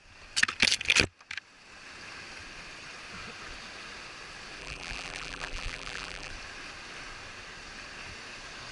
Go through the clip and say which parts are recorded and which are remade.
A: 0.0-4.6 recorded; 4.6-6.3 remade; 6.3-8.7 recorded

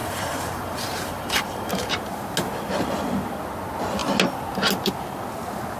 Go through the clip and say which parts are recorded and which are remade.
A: 0.0-1.9 remade; 1.9-5.8 recorded

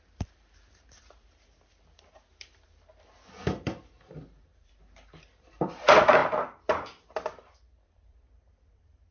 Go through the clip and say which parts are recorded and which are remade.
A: 0.0-6.2 remade; 6.2-7.8 recorded; 7.8-9.1 remade

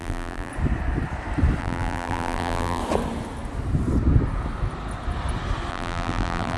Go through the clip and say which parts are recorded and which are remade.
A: 0.0-0.5 remade; 0.5-1.6 recorded; 1.6-2.8 remade; 2.8-5.7 recorded; 5.7-6.6 remade

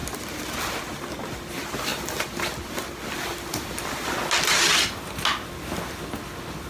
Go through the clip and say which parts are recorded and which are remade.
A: 0.0-6.7 recorded

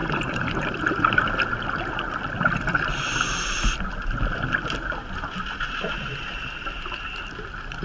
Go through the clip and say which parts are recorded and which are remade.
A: 0.0-7.8 recorded